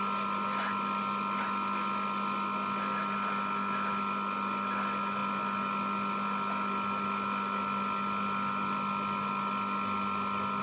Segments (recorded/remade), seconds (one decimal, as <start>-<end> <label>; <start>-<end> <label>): 0.0-10.6 recorded